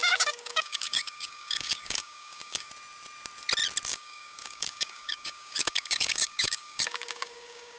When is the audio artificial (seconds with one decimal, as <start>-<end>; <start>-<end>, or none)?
0.0-2.7; 3.9-7.8